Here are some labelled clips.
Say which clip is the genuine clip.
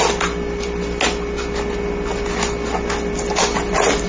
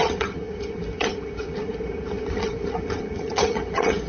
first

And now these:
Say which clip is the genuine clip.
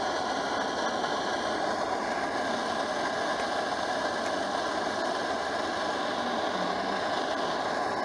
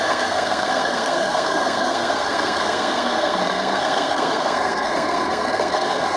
first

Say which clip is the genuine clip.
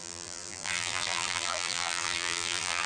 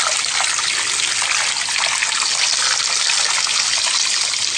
second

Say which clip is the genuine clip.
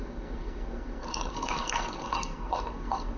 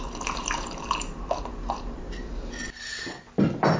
second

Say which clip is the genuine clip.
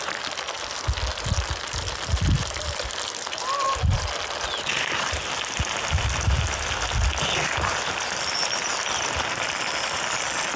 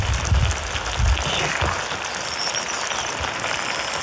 second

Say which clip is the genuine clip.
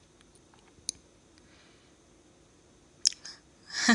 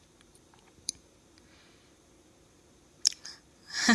first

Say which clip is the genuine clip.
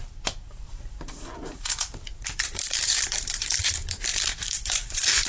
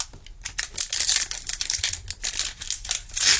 second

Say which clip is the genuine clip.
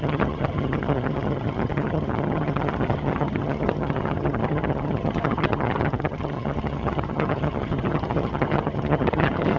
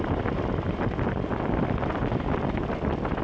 second